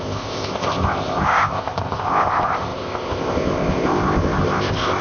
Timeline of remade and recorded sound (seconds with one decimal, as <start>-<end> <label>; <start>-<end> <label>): 0.0-5.0 remade